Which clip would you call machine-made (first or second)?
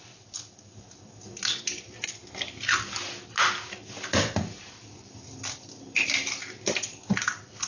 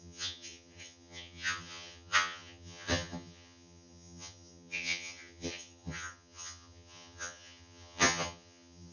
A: second